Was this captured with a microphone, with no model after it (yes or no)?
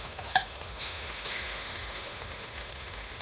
no